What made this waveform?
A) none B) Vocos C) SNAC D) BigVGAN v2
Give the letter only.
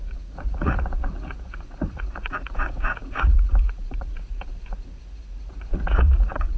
B